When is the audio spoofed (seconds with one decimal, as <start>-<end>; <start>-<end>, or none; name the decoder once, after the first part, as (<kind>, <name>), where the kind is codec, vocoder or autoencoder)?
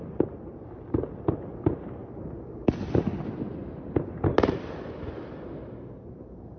none